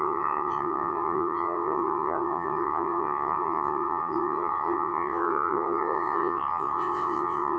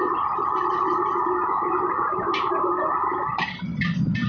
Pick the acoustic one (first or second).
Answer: second